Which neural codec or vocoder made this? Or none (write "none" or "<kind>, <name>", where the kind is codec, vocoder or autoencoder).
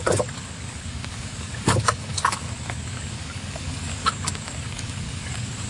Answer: codec, DAC